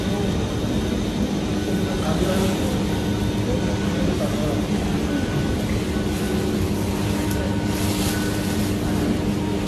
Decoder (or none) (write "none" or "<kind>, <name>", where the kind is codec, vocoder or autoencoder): none